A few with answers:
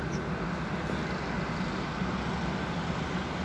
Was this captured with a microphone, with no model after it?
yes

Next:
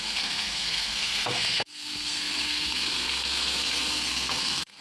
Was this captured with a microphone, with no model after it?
no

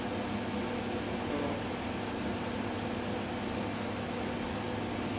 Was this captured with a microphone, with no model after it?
yes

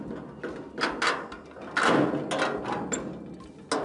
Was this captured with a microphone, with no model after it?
yes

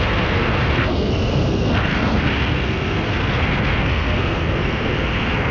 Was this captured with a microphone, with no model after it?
no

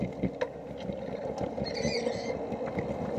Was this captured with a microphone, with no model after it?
yes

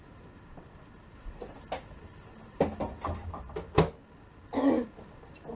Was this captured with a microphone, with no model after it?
yes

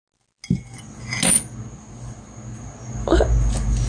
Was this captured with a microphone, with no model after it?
yes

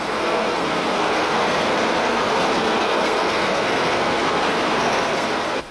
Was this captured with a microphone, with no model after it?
no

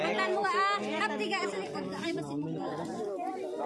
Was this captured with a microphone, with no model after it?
yes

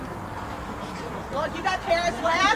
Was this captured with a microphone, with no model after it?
yes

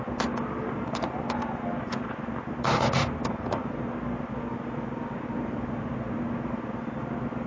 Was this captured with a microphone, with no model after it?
yes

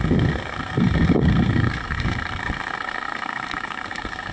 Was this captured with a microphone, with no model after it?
no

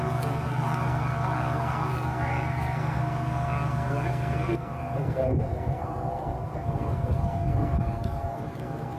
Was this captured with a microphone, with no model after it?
no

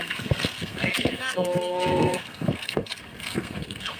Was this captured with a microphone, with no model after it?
no